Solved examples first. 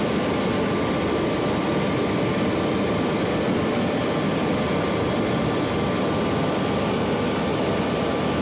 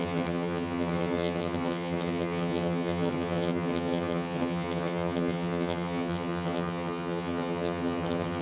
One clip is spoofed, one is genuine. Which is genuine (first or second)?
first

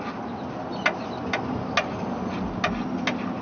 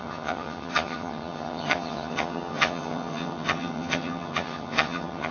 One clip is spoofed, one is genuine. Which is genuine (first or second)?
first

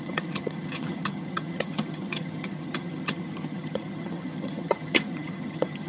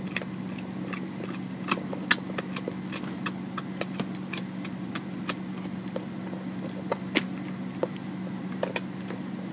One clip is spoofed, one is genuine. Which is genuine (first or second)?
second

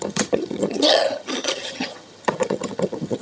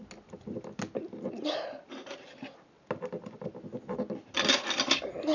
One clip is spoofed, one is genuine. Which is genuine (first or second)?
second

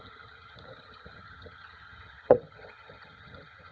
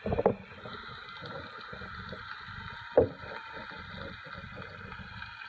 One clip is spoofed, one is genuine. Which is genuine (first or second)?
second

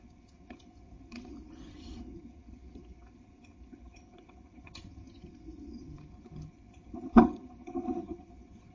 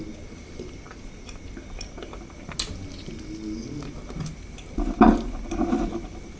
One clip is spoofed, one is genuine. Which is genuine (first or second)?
second